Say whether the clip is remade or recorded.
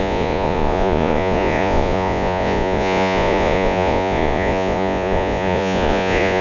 remade